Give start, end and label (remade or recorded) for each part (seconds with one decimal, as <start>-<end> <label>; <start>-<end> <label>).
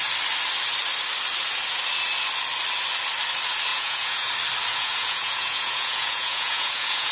0.0-3.7 recorded; 3.7-4.3 remade; 4.3-4.7 recorded; 4.7-7.1 remade